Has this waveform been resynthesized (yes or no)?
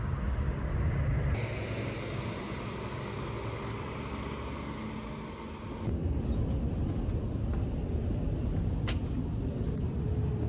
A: no